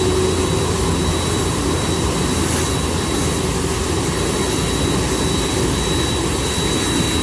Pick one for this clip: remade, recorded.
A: recorded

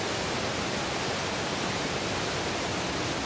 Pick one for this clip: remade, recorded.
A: recorded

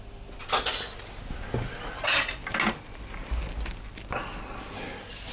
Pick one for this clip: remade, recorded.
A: recorded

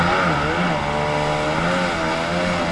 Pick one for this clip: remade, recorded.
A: recorded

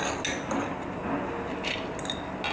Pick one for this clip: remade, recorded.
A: recorded